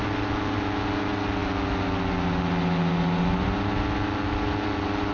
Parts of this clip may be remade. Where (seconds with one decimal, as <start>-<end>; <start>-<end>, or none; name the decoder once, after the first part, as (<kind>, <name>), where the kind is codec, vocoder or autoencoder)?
none